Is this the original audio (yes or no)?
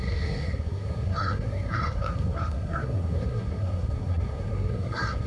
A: no